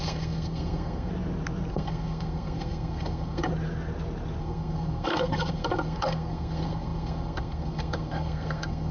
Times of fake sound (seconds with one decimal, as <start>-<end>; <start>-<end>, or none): 0.0-1.1; 1.7-3.5; 4.4-8.9